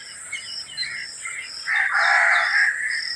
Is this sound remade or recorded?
remade